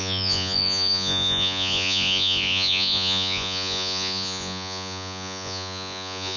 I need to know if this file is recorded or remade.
remade